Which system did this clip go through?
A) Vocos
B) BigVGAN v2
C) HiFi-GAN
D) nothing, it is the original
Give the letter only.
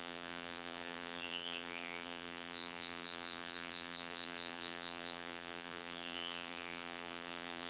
B